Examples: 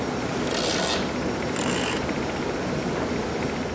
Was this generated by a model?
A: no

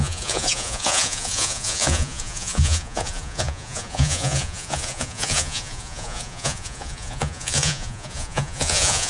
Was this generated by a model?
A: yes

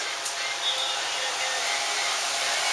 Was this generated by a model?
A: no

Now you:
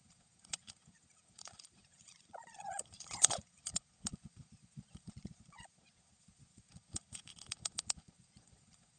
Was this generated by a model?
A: yes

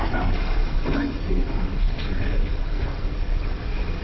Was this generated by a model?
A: yes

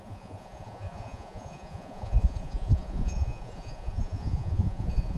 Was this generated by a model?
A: yes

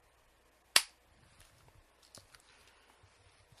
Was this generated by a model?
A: no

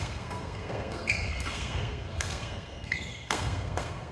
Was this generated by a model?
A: yes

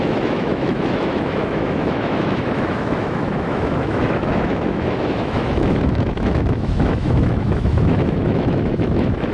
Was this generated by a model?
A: yes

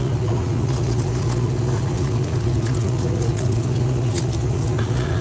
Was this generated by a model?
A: yes